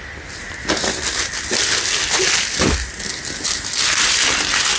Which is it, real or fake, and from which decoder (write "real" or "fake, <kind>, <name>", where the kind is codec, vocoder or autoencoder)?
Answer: real